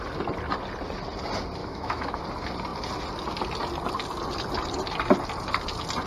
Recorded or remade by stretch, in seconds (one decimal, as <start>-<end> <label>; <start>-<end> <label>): 0.0-1.6 recorded; 1.6-2.2 remade; 2.2-6.1 recorded